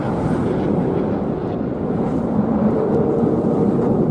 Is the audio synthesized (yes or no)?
yes